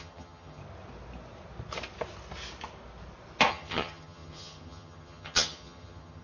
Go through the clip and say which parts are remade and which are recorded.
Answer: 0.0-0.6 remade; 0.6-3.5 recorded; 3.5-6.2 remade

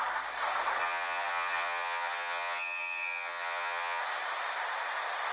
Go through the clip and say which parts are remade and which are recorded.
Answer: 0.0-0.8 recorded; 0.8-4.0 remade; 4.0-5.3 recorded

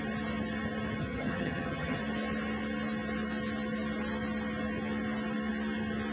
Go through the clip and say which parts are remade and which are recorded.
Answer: 0.0-1.0 recorded; 1.0-2.0 remade; 2.0-6.1 recorded

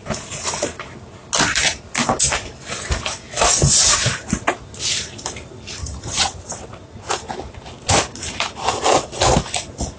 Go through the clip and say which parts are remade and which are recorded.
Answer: 0.0-5.8 recorded; 5.8-6.3 remade; 6.3-10.0 recorded

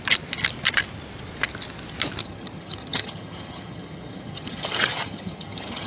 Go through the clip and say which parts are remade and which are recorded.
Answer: 0.0-2.2 recorded; 2.2-5.9 remade

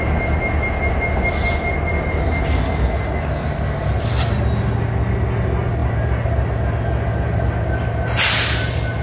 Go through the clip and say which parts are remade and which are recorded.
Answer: 0.0-9.0 recorded

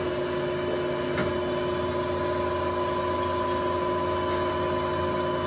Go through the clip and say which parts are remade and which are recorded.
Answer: 0.0-5.5 recorded